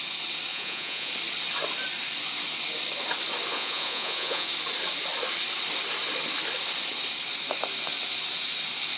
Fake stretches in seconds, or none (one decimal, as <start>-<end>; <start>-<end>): 0.5-1.1; 3.5-4.5